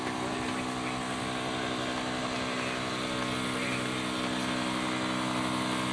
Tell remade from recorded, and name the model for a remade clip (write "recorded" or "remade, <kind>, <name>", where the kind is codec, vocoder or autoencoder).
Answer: recorded